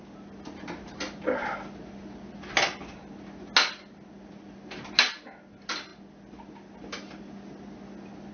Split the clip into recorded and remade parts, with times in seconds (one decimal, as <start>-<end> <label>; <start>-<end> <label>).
0.0-8.3 recorded